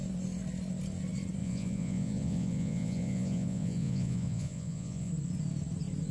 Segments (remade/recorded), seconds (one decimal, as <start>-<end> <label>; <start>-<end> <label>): 0.0-1.4 recorded; 1.4-5.1 remade; 5.1-6.1 recorded

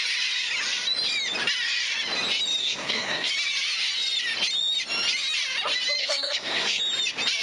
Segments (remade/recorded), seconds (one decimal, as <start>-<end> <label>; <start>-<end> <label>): 0.0-2.6 recorded; 2.6-3.3 remade; 3.3-6.0 recorded; 6.0-6.8 remade; 6.8-7.4 recorded

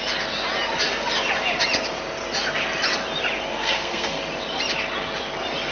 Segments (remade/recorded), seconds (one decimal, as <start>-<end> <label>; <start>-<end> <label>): 0.0-3.5 recorded; 3.5-4.2 remade; 4.2-5.7 recorded

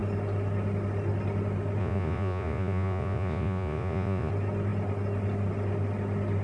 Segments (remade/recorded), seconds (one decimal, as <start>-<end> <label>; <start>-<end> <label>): 0.0-1.8 recorded; 1.8-4.3 remade; 4.3-6.4 recorded

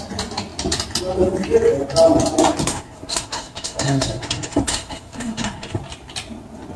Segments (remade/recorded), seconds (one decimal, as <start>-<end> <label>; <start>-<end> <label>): 0.0-2.6 recorded; 2.6-5.8 remade; 5.8-6.8 recorded